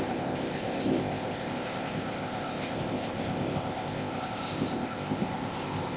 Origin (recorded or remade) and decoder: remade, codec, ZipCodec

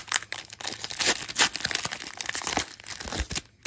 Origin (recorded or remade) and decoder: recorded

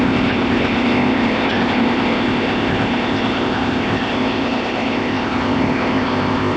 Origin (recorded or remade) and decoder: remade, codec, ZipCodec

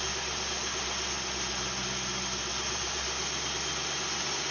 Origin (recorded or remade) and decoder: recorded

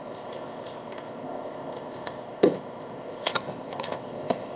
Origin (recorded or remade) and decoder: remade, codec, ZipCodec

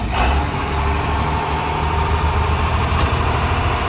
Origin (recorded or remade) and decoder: recorded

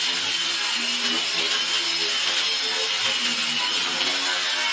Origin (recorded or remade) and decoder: recorded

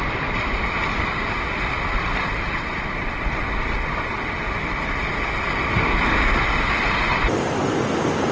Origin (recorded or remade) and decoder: recorded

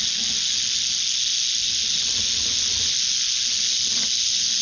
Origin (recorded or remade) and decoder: recorded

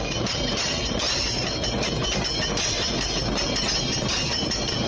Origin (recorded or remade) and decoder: recorded